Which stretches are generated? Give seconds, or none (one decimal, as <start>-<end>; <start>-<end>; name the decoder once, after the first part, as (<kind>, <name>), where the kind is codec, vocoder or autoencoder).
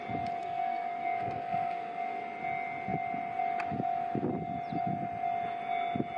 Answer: 0.4-2.2 (codec, SNAC)